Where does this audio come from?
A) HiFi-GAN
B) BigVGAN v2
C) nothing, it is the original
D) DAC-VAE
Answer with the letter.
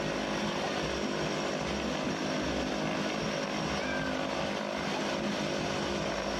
C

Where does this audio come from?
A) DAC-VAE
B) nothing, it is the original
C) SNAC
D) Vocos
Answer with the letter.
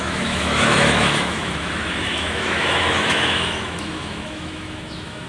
A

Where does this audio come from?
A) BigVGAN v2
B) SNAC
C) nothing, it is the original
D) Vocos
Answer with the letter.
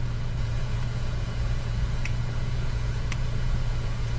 D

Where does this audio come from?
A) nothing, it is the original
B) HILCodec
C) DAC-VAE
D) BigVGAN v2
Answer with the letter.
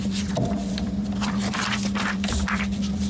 D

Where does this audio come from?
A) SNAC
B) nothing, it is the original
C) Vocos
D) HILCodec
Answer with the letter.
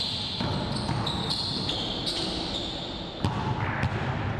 B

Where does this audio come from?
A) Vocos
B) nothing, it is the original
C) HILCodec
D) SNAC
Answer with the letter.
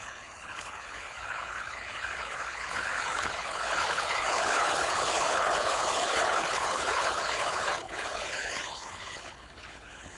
C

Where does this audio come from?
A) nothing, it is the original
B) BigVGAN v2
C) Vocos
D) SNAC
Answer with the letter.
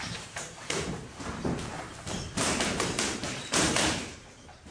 B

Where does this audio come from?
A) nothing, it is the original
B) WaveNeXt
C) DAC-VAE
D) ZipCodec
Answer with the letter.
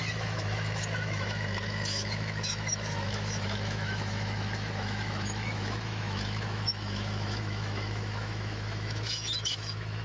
C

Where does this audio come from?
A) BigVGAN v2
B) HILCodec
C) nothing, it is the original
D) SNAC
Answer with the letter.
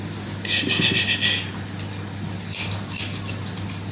C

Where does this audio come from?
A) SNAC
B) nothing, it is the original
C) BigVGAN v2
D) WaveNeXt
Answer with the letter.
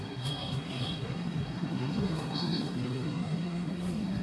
A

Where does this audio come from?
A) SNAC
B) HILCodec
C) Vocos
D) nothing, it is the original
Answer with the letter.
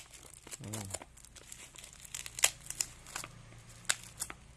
D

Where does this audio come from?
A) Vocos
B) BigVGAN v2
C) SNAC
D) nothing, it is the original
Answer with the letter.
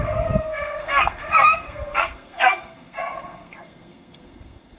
C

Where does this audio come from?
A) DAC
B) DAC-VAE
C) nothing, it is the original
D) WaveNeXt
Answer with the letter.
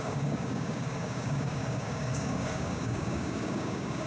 A